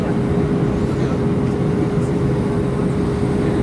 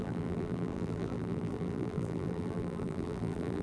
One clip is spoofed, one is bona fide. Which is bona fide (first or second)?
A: first